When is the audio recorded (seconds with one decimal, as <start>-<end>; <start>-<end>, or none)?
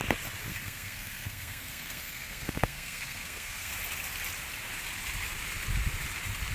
0.0-0.5; 3.7-6.5